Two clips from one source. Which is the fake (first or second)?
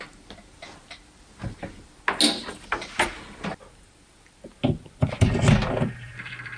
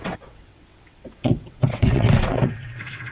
second